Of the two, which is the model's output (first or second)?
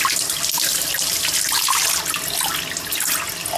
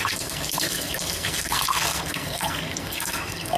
second